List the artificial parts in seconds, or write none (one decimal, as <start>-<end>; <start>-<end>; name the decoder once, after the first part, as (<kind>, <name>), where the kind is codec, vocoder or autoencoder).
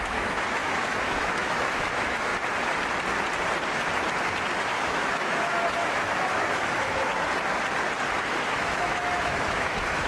0.0-2.3 (autoencoder, DAC-VAE); 4.6-7.1; 8.1-10.1